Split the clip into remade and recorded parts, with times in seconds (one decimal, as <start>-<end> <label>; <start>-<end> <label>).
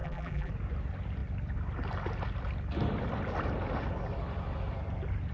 0.0-0.5 remade; 0.5-5.3 recorded